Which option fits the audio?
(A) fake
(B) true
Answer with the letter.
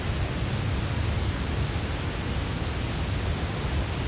B